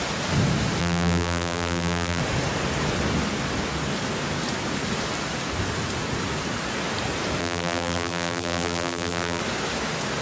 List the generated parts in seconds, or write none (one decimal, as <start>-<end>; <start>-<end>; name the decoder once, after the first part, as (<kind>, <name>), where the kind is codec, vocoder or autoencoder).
0.8-2.2 (vocoder, BigVGAN v2); 7.4-9.4